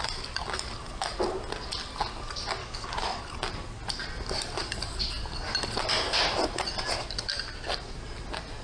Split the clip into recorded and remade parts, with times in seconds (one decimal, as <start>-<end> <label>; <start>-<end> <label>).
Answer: 0.0-2.6 recorded; 2.6-3.2 remade; 3.2-8.6 recorded